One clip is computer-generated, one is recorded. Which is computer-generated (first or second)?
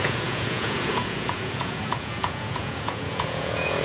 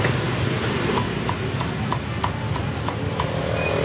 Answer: first